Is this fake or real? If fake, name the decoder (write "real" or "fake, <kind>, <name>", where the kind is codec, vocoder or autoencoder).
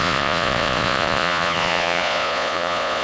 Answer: fake, vocoder, Vocos